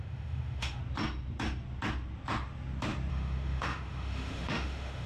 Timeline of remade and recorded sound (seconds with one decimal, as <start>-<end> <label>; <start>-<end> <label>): 0.0-0.8 remade; 0.8-3.1 recorded; 3.1-5.1 remade